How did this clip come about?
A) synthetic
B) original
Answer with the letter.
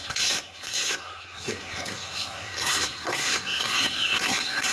A